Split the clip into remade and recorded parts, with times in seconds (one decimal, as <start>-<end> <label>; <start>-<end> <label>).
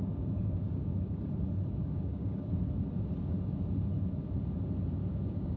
0.0-0.9 remade; 0.9-1.8 recorded; 1.8-2.5 remade; 2.5-5.1 recorded; 5.1-5.6 remade